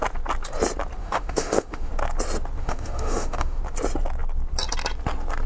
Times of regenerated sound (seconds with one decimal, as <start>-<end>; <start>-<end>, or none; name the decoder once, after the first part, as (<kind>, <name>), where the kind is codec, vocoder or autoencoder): 1.0-1.9 (autoencoder, DAC-VAE); 2.6-3.6